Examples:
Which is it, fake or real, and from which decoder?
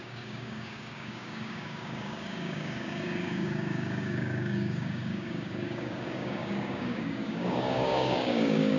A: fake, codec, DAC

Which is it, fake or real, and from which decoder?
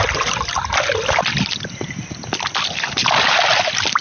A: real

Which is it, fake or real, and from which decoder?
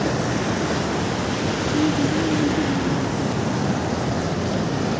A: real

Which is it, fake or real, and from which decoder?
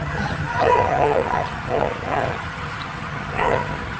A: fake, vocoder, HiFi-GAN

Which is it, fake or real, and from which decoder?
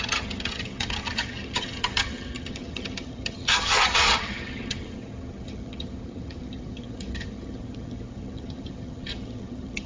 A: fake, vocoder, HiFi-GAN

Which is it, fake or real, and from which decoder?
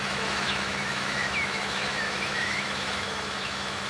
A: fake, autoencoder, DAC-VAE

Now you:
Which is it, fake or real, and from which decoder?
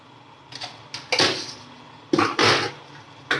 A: real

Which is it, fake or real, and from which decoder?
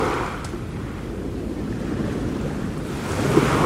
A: real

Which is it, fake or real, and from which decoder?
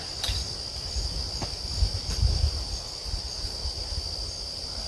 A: real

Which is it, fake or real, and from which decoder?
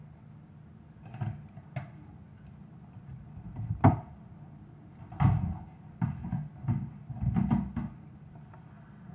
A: real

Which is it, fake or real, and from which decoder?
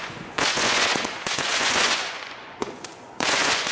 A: fake, vocoder, Vocos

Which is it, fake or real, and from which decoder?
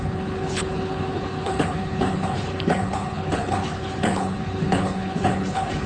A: fake, codec, HILCodec